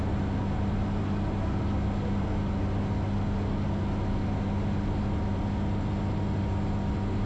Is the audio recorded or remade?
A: recorded